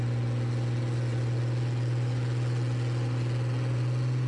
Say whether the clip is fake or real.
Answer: real